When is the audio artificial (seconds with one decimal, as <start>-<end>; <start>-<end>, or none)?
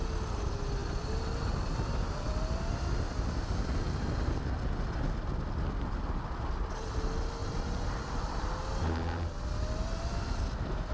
none